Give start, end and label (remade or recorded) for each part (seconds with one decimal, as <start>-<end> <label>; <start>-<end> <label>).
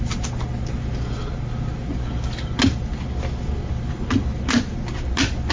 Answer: 0.0-5.5 recorded